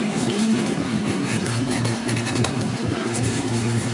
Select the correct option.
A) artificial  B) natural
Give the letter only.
A